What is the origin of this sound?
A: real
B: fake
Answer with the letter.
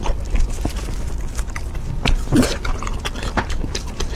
A